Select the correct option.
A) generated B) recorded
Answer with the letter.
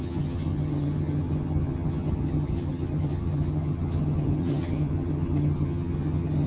A